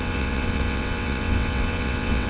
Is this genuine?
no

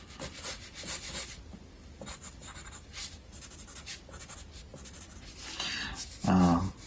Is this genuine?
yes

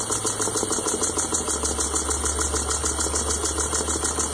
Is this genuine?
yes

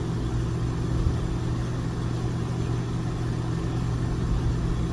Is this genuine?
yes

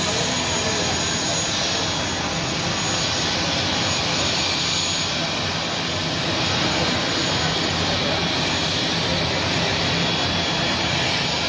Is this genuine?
yes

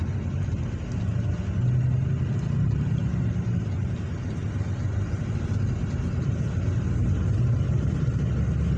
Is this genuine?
yes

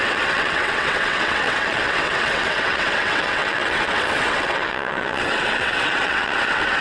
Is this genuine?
no